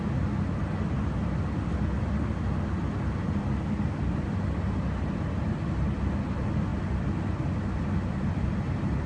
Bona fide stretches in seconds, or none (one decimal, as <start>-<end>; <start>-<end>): 0.0-9.1